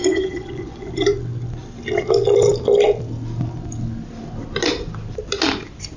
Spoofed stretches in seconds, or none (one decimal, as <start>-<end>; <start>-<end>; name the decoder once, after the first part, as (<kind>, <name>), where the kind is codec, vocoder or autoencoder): 0.0-0.9 (vocoder, Vocos)